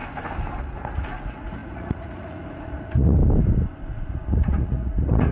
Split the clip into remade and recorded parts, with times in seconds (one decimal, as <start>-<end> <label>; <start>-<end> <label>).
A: 0.0-0.6 recorded; 0.6-3.2 remade; 3.2-3.9 recorded; 3.9-5.3 remade